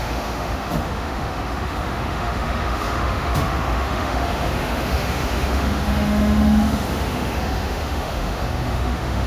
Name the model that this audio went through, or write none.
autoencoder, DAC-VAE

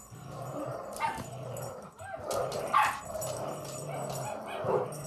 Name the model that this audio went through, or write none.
none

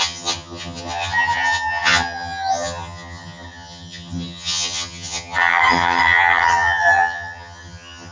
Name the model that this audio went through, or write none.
vocoder, HiFi-GAN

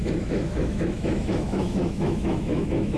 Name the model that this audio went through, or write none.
autoencoder, DAC-VAE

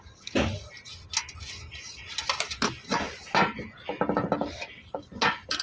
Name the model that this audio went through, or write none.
none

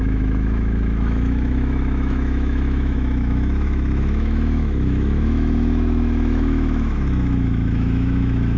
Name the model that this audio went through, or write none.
autoencoder, DAC-VAE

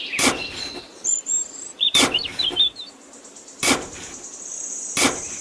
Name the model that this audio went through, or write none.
vocoder, BigVGAN v2